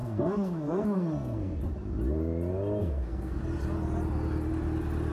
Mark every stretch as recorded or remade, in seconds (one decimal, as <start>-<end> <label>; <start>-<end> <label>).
0.0-1.6 remade; 1.6-2.8 recorded; 2.8-3.4 remade; 3.4-5.1 recorded